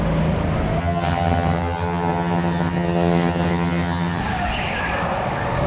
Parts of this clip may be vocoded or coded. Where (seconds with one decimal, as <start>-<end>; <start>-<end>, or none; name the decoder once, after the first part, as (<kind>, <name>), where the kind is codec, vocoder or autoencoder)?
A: 0.8-4.2 (vocoder, HiFi-GAN)

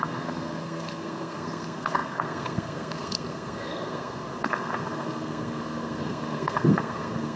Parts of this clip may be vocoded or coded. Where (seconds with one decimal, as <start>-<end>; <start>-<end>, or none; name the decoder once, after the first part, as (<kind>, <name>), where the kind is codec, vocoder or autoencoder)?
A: 0.0-7.4 (codec, SNAC)

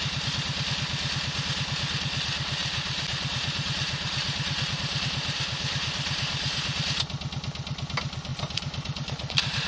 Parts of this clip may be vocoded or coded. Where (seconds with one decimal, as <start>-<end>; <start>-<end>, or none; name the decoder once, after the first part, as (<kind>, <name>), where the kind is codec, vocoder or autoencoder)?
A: 2.6-6.8 (vocoder, BigVGAN v2); 8.3-9.7

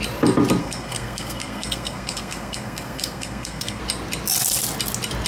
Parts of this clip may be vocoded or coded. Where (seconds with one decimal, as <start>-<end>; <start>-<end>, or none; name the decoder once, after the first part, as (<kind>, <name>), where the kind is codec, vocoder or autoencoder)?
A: 0.6-3.8 (codec, SNAC)

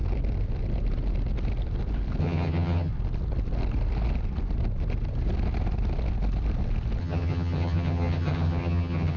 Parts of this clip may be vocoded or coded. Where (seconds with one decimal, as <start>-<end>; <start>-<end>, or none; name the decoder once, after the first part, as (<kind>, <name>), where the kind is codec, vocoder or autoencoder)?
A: 2.2-2.9 (vocoder, HiFi-GAN); 7.0-9.2

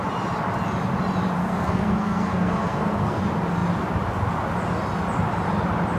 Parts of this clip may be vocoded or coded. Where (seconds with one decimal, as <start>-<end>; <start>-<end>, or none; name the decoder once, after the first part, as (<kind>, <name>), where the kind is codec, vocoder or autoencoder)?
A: 1.4-3.2 (codec, SNAC)

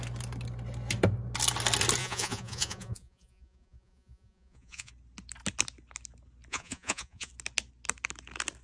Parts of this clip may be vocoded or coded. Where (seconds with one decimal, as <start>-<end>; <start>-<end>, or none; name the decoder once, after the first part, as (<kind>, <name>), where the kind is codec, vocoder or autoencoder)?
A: 2.0-4.9 (vocoder, Vocos); 6.5-7.3